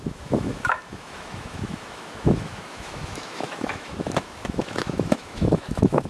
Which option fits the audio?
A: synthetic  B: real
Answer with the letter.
A